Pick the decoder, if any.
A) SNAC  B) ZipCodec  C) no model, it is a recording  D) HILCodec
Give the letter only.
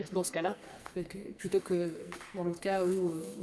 A